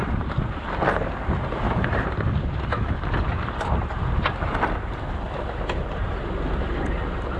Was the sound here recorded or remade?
recorded